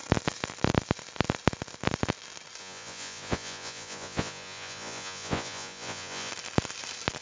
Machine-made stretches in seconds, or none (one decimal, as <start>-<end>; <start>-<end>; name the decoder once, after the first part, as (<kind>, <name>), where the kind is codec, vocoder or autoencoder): 2.6-6.3 (vocoder, Vocos)